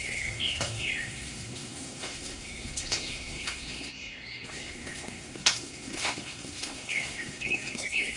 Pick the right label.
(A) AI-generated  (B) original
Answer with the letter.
A